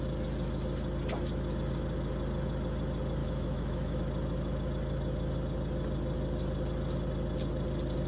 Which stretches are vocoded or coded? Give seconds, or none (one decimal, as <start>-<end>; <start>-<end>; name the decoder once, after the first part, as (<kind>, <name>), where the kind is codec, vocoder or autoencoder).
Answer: 3.2-4.0 (autoencoder, DAC-VAE)